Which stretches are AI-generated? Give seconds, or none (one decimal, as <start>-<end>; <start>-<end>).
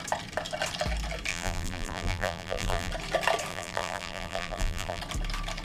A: 1.3-2.9; 3.5-5.0